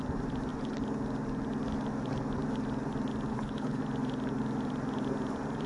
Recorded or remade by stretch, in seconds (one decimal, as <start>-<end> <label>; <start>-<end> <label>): 0.0-3.3 recorded; 3.3-3.8 remade; 3.8-5.7 recorded